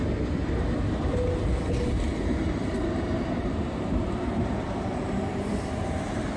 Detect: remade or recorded remade